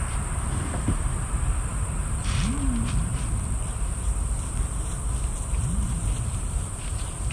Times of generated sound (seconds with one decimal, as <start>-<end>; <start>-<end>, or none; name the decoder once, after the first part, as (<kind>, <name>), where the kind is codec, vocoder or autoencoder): 0.0-7.3 (vocoder, BigVGAN v2)